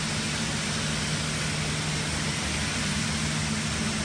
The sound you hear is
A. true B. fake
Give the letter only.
A